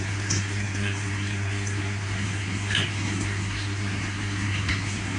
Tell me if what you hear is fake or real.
fake